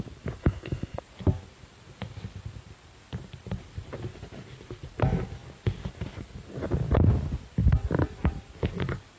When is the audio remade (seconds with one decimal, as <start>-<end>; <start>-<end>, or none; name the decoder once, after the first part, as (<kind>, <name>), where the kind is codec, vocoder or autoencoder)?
0.4-1.0 (codec, SNAC)